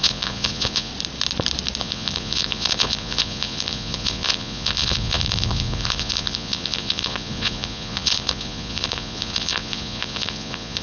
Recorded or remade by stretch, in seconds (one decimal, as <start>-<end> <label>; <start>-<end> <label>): 0.0-0.9 remade; 0.9-1.8 recorded; 1.8-10.8 remade